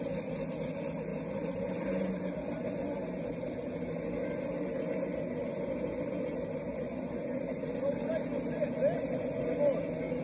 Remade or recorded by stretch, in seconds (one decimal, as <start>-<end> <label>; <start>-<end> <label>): 0.0-6.7 recorded; 6.7-7.4 remade; 7.4-10.2 recorded